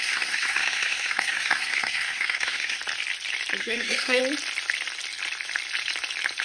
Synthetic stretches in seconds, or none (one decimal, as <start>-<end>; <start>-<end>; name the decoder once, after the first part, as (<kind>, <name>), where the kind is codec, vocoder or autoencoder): 0.0-2.8 (codec, SNAC); 3.6-4.2